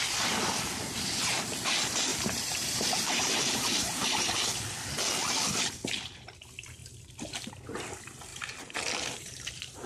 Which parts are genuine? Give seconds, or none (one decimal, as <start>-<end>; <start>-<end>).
0.0-2.1; 4.2-8.3